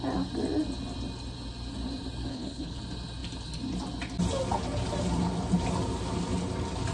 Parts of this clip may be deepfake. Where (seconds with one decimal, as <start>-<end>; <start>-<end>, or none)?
2.3-2.8